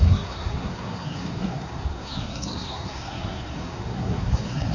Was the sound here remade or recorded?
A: remade